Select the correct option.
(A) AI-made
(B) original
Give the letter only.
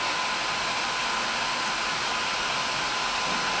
B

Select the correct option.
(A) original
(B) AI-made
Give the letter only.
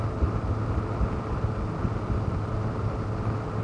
A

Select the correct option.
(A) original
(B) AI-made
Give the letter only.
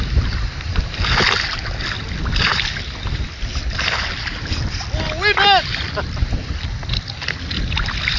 A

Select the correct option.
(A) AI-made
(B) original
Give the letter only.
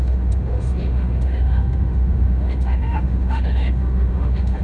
A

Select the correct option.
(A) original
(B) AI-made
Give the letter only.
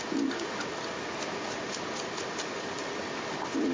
A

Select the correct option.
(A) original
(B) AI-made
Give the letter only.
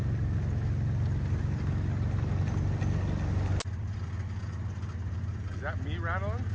A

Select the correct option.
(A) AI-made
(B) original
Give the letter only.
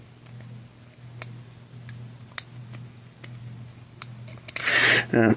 B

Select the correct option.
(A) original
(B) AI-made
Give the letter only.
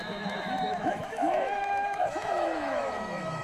B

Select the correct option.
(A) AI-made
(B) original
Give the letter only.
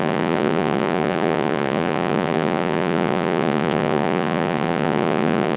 A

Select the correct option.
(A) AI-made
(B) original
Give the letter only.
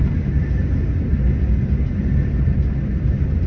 B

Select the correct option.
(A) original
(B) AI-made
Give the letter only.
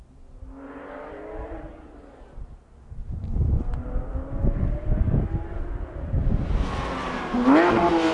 A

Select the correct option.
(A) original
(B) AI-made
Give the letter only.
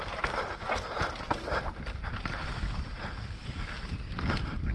B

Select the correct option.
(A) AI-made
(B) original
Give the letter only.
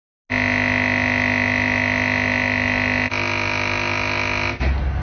B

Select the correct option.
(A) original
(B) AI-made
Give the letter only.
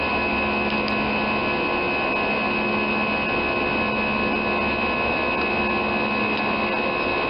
A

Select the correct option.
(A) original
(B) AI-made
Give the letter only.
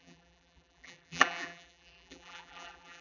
B